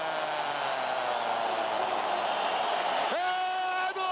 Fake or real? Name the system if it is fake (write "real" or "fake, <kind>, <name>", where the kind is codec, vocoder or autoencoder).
real